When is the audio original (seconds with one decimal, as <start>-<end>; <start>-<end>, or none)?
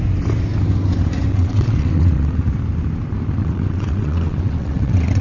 0.0-1.3; 2.5-3.4